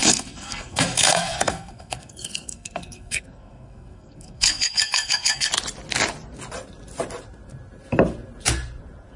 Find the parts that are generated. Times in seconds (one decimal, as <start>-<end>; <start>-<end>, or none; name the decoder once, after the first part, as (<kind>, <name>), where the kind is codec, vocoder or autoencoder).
0.0-5.5 (codec, SNAC)